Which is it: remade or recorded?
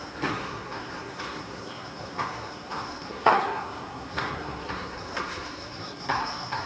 remade